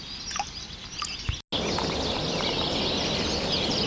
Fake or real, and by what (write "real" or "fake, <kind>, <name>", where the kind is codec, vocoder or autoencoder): real